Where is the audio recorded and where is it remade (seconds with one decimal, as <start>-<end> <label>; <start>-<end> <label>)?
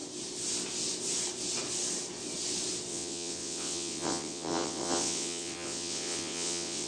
0.0-2.9 recorded; 2.9-6.9 remade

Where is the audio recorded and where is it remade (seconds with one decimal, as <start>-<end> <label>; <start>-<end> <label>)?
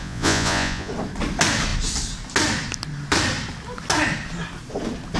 0.0-0.9 remade; 0.9-5.2 recorded